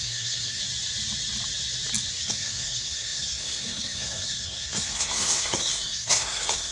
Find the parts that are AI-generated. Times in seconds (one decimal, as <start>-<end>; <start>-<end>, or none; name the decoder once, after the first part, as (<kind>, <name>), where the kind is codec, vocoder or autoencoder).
0.0-0.6 (codec, SNAC); 2.1-6.7